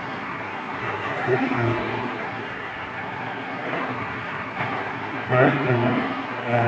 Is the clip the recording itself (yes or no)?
no